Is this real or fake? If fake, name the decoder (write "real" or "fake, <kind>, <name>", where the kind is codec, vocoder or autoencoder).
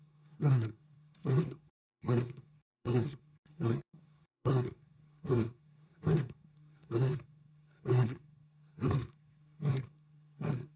fake, codec, SNAC